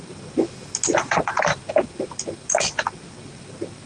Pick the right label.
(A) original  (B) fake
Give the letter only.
A